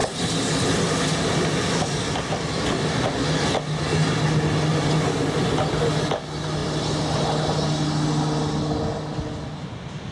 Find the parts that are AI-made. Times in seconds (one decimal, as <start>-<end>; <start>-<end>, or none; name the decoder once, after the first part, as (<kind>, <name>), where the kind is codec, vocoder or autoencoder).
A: none